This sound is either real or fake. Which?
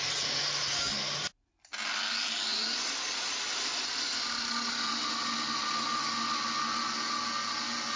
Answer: real